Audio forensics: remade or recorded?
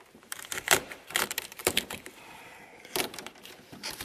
remade